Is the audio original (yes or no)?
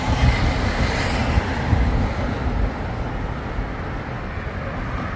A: yes